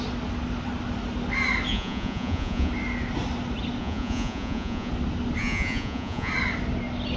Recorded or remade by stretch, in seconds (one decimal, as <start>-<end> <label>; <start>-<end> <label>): 0.0-1.7 recorded; 1.7-2.7 remade; 2.7-3.8 recorded; 3.8-4.9 remade; 4.9-5.4 recorded; 5.4-6.3 remade; 6.3-7.2 recorded